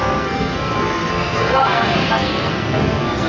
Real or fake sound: fake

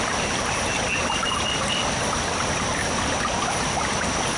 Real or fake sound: real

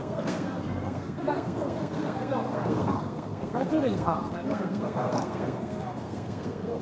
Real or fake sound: fake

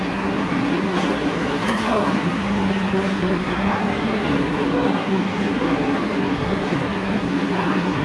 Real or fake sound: fake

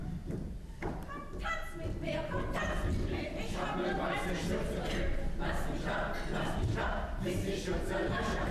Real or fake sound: real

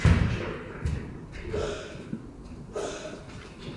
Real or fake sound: real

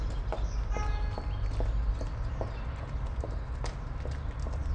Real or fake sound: real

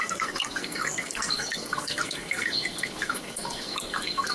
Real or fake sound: fake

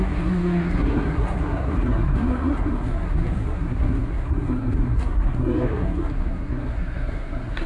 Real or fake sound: fake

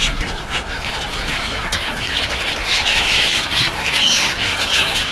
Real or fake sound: fake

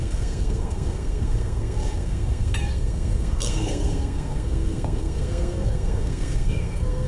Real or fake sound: fake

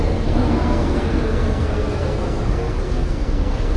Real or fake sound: fake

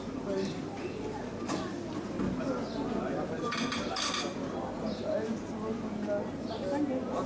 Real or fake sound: real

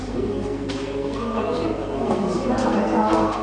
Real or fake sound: fake